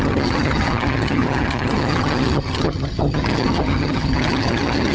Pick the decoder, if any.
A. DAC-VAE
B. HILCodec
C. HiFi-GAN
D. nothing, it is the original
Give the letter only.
C